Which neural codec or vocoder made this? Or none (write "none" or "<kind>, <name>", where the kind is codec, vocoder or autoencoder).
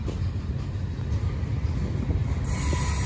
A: none